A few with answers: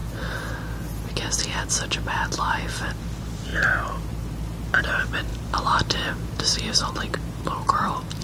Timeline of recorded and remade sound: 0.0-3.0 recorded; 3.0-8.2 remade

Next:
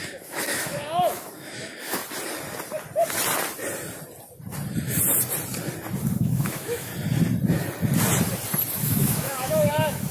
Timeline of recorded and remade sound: 0.0-2.0 remade; 2.0-6.0 recorded; 6.0-6.9 remade; 6.9-8.7 recorded; 8.7-10.1 remade

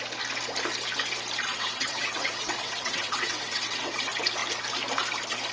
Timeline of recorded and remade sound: 0.0-1.5 recorded; 1.5-4.0 remade; 4.0-5.5 recorded

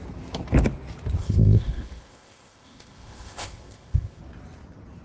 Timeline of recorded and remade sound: 0.0-1.2 recorded; 1.2-4.2 remade; 4.2-5.0 recorded

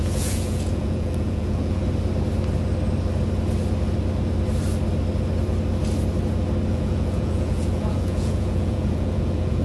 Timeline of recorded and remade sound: 0.0-1.8 remade; 1.8-6.7 recorded; 6.7-9.6 remade